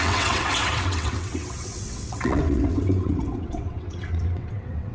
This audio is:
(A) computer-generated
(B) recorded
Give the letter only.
A